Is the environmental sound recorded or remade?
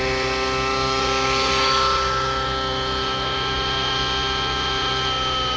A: recorded